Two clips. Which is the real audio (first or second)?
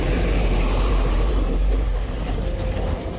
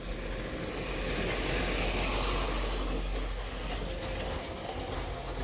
second